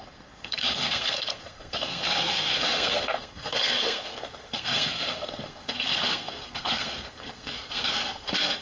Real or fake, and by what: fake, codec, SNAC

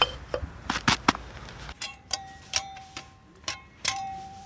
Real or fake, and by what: fake, vocoder, BigVGAN v2